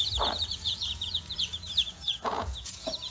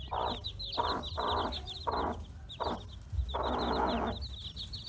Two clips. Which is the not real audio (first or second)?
first